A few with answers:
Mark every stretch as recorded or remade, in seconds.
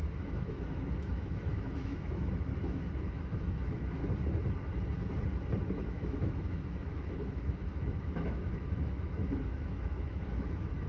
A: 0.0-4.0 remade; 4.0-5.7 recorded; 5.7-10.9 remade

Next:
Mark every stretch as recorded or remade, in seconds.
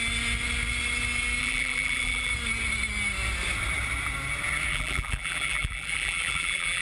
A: 0.0-1.4 recorded; 1.4-2.3 remade; 2.3-4.7 recorded; 4.7-6.8 remade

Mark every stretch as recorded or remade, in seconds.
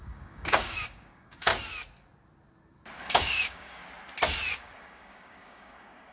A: 0.0-1.5 remade; 1.5-3.0 recorded; 3.0-3.8 remade; 3.8-4.6 recorded; 4.6-6.1 remade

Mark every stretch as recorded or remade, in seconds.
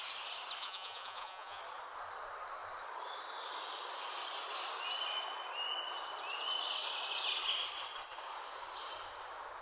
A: 0.0-0.6 recorded; 0.6-1.6 remade; 1.6-9.6 recorded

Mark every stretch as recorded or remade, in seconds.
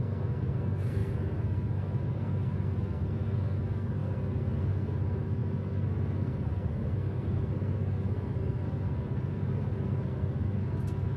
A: 0.0-11.2 remade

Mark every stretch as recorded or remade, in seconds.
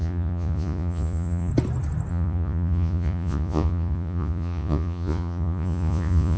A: 0.0-1.5 remade; 1.5-2.1 recorded; 2.1-6.4 remade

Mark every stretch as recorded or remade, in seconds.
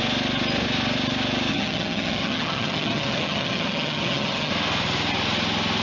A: 0.0-1.5 recorded; 1.5-4.5 remade; 4.5-5.8 recorded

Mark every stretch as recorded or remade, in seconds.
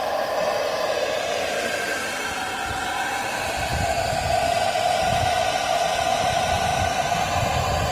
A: 0.0-7.9 recorded